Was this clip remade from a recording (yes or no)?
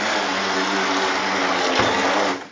no